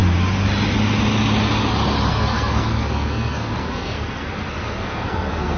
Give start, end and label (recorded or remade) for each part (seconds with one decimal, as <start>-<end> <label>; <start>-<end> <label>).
0.0-2.1 recorded; 2.1-5.6 remade